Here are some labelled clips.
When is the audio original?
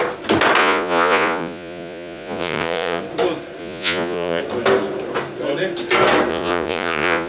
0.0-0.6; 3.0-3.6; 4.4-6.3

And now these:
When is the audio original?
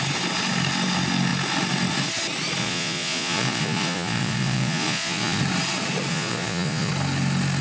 0.0-2.6; 5.4-6.1; 6.9-7.6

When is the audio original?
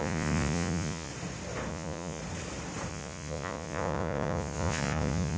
1.1-1.7; 2.2-2.9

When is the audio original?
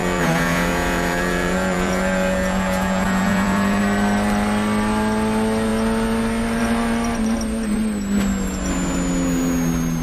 3.8-10.0